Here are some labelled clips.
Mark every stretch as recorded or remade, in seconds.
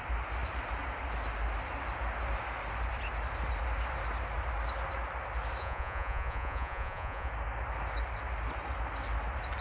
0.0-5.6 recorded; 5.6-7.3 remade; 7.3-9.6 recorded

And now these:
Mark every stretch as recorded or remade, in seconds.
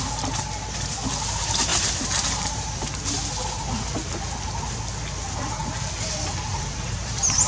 0.0-1.7 recorded; 1.7-2.7 remade; 2.7-6.5 recorded; 6.5-7.5 remade